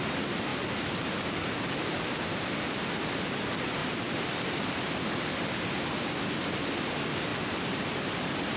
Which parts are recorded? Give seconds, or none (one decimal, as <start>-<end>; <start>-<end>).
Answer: 0.0-0.5; 3.1-3.8; 6.1-7.3; 8.0-8.6

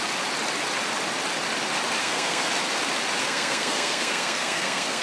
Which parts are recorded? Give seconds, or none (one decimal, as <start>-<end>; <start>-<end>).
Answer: 0.0-2.0; 2.5-3.2

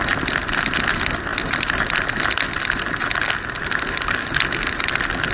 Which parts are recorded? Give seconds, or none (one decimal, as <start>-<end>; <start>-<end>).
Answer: 0.0-5.3

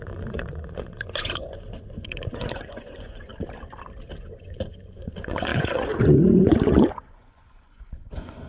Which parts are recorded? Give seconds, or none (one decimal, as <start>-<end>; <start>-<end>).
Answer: 3.3-4.2